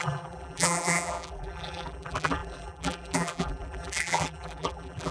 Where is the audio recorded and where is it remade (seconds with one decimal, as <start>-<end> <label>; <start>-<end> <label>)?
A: 0.0-5.1 remade